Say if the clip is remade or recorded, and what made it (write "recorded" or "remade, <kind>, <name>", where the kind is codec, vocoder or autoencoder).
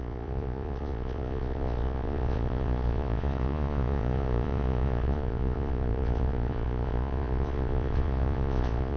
remade, vocoder, Vocos